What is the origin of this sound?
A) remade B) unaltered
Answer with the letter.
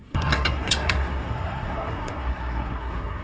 A